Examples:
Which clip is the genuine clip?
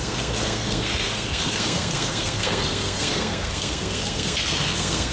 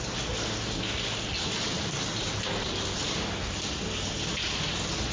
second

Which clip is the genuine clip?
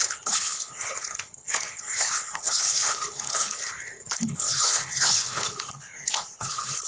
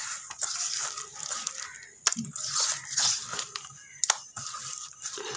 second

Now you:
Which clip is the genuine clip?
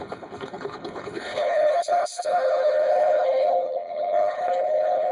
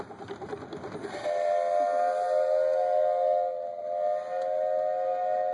second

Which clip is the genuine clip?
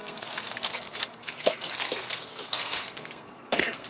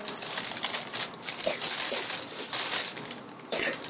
second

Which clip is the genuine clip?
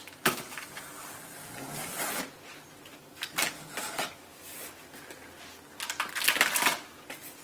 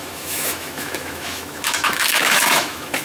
first